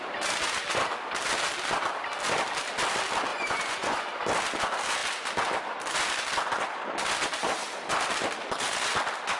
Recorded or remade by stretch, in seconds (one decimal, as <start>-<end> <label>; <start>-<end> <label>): 0.0-3.3 recorded; 3.3-4.0 remade; 4.0-9.4 recorded